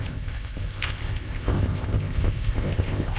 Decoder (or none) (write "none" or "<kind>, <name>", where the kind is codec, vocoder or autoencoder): codec, ZipCodec